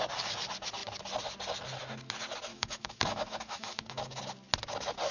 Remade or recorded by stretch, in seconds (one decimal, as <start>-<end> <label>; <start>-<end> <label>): 0.0-2.5 recorded; 2.5-4.2 remade; 4.2-5.1 recorded